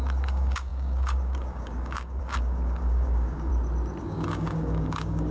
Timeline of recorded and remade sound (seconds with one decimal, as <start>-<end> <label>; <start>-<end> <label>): 0.0-3.5 remade; 3.5-4.0 recorded; 4.0-5.3 remade